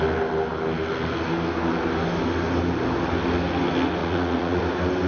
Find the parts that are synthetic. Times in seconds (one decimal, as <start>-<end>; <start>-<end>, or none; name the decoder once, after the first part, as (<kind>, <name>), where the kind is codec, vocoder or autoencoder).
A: 4.0-4.6 (vocoder, Vocos)